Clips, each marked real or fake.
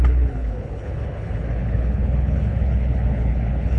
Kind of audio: fake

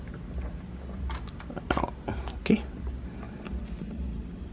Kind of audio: real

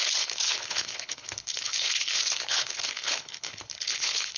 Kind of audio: fake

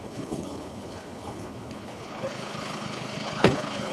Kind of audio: fake